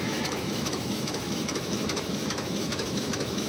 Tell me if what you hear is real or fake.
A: fake